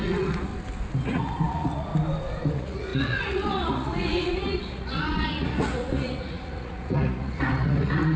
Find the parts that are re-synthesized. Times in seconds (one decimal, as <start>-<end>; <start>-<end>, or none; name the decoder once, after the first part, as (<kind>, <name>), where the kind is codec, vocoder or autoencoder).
0.0-0.5 (vocoder, Vocos); 1.0-1.9; 2.5-8.2